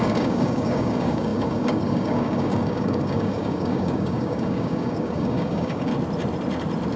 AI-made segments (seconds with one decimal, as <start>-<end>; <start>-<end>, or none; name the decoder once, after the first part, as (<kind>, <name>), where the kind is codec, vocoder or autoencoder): 0.0-5.9 (codec, DAC)